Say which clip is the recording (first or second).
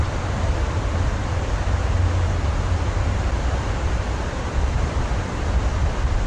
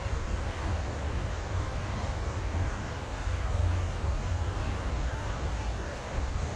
first